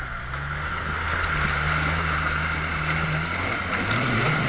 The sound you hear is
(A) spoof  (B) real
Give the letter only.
B